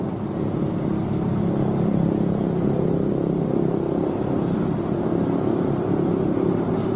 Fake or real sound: real